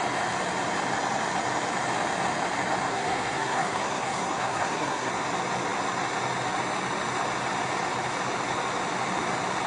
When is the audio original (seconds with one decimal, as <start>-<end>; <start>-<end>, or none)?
0.0-2.9; 5.1-9.7